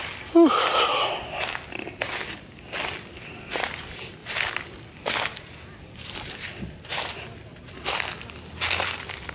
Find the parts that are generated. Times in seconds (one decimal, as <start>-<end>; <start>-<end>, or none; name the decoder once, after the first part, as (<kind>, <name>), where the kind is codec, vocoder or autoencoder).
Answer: none